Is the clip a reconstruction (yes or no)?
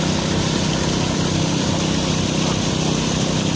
no